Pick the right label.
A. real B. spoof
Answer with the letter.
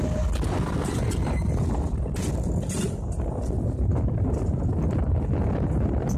A